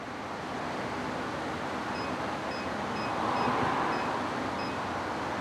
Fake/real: real